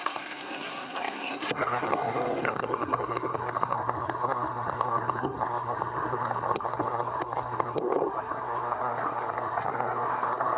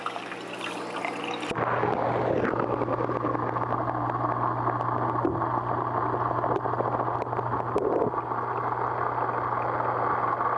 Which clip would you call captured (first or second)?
second